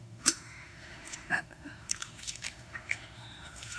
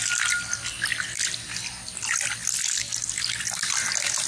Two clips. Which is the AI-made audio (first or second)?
first